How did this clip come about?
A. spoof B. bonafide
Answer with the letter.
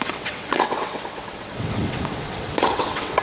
A